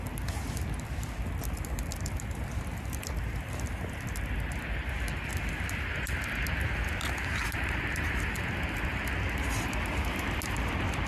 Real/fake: real